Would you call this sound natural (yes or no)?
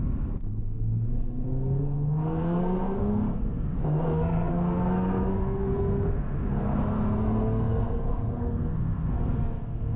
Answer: no